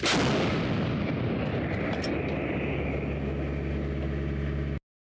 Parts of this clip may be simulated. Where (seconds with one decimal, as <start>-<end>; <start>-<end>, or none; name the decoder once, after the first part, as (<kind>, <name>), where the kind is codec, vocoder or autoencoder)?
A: 1.5-4.0 (vocoder, BigVGAN v2)